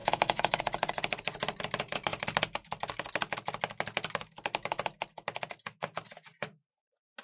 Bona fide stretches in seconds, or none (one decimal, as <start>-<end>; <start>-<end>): 0.6-7.2